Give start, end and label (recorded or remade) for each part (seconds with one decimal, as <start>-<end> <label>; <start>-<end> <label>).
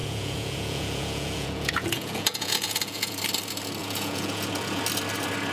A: 0.0-3.2 remade; 3.2-3.8 recorded; 3.8-4.8 remade; 4.8-5.5 recorded